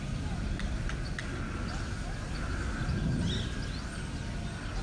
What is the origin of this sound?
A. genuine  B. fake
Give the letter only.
A